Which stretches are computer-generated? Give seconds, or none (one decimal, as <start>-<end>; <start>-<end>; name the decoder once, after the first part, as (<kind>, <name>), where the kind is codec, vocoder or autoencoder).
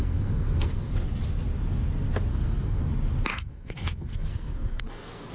0.0-0.9 (codec, SNAC); 2.3-2.9; 3.3-5.3